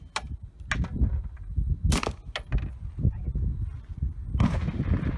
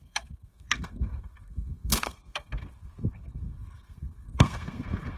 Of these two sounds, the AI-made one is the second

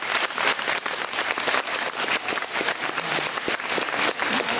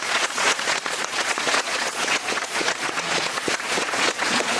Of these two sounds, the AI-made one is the second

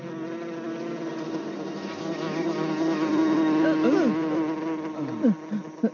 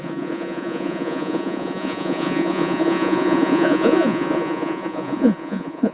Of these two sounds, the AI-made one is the second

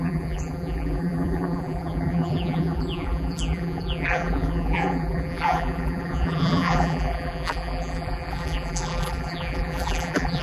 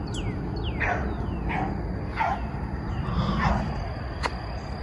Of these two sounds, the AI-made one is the first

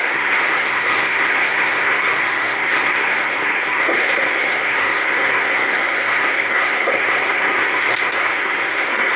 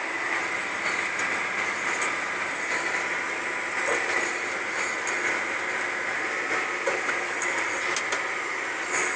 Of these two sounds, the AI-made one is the first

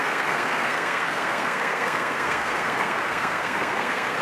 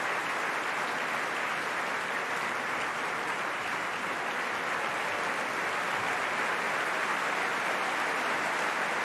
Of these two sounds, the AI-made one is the first